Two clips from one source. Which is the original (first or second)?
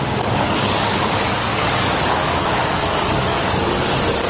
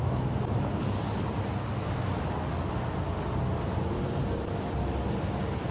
second